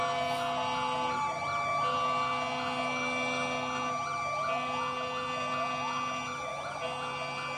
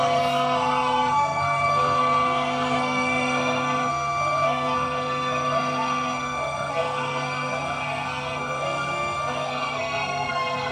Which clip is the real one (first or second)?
first